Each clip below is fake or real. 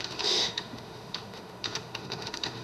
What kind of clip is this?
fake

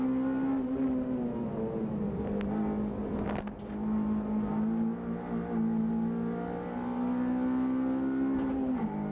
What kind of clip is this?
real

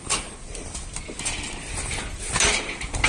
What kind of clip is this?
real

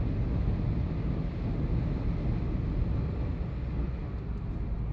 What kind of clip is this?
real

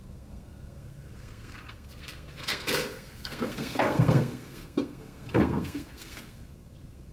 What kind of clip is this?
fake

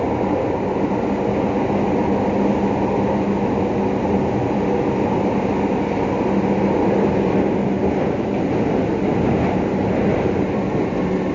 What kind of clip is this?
real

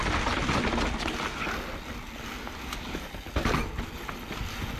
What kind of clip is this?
real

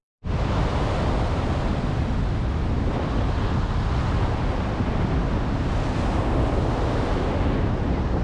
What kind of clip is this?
real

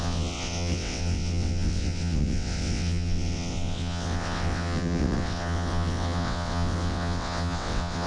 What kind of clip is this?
fake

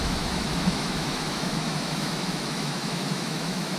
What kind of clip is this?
fake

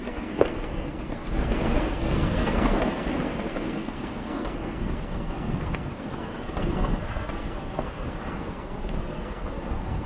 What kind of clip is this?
fake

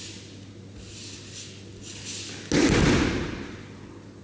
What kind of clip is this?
real